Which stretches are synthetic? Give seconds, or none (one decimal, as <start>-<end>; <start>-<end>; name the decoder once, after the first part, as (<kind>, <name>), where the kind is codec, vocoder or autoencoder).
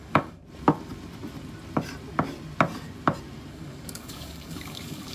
0.0-0.4 (codec, DAC); 3.5-5.1